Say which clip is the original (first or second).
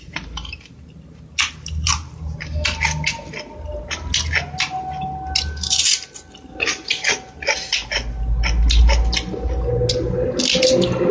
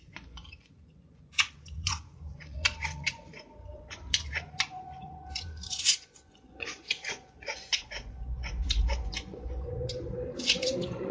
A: first